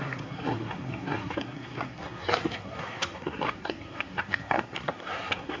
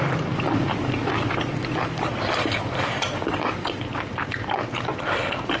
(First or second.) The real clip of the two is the second